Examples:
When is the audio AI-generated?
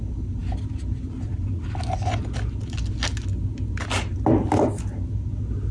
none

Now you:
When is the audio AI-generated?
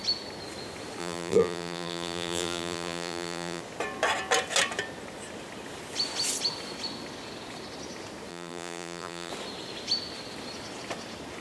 1.0-3.6 (vocoder, BigVGAN v2); 8.3-9.3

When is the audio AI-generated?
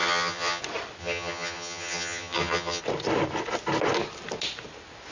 0.0-0.6 (vocoder, HiFi-GAN); 1.0-2.8